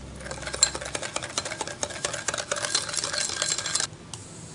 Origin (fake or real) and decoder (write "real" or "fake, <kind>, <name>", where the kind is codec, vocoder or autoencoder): real